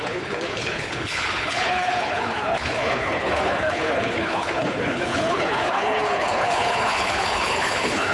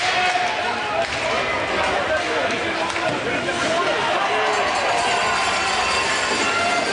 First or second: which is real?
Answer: second